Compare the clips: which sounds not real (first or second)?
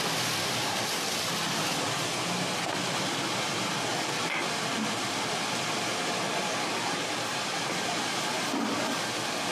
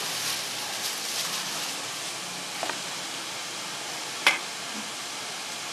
first